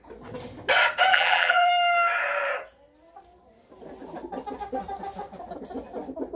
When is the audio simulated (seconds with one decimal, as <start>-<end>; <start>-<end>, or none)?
1.1-1.7